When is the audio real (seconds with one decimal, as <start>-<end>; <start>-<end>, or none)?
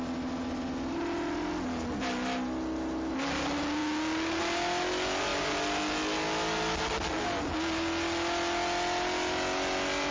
0.0-10.1